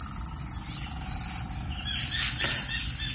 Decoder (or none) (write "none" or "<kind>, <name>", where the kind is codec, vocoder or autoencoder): none